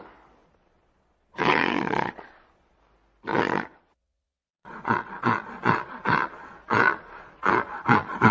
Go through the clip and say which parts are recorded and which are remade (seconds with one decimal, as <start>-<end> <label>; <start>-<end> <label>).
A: 0.0-0.4 recorded; 0.4-2.8 remade; 2.8-3.3 recorded; 3.3-8.3 remade